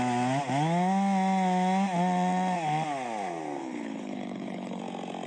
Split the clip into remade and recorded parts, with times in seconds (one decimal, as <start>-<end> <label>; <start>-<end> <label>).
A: 0.0-3.6 recorded; 3.6-4.8 remade; 4.8-5.3 recorded